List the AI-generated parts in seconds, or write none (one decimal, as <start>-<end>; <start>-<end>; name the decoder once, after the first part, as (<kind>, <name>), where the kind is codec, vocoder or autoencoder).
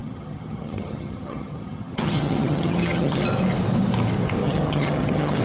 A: 0.0-3.2 (vocoder, HiFi-GAN); 4.4-5.4